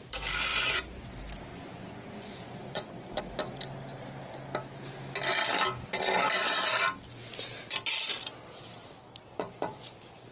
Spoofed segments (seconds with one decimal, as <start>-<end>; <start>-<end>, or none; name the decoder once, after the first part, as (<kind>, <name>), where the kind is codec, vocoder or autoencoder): 0.5-1.1 (vocoder, Vocos); 1.5-3.2; 9.3-10.3